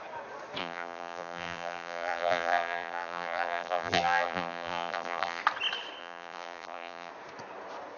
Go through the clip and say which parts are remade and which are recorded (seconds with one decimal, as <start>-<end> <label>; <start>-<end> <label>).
0.0-0.6 recorded; 0.6-5.4 remade; 5.4-6.0 recorded; 6.0-7.1 remade; 7.1-8.0 recorded